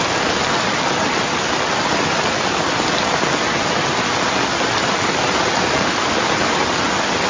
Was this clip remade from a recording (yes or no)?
no